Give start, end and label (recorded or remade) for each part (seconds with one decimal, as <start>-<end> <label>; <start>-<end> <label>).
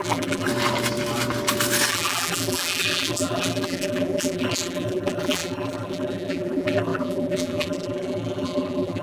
0.0-0.5 remade; 0.5-1.9 recorded; 1.9-9.0 remade